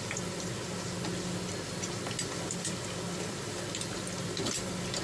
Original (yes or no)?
yes